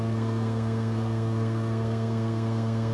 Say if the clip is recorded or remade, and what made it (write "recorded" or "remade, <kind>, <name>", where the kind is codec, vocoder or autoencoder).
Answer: remade, codec, SNAC